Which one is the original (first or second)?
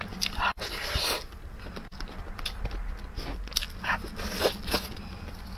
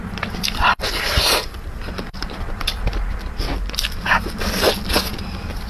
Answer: first